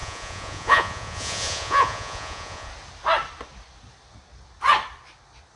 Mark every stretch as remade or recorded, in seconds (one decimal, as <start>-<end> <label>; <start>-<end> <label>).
0.0-2.7 remade; 2.7-5.6 recorded